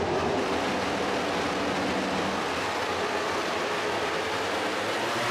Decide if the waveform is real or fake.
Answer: real